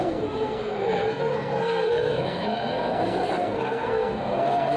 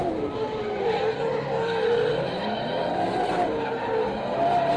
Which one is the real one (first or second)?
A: second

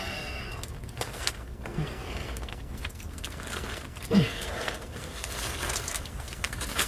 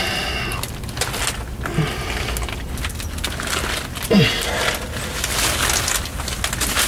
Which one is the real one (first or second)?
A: second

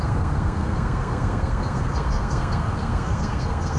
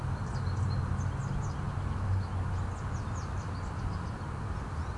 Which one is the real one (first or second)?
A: second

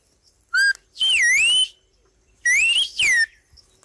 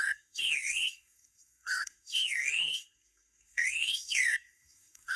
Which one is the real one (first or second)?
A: first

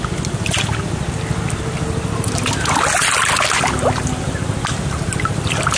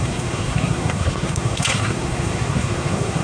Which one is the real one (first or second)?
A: first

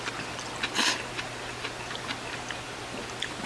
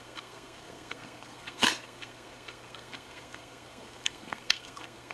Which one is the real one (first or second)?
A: first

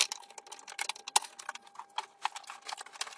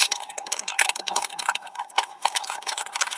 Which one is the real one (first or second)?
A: first